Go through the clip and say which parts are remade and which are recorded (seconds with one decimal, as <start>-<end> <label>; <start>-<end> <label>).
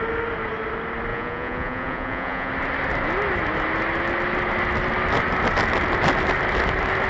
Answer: 0.0-1.1 recorded; 1.1-2.5 remade; 2.5-7.1 recorded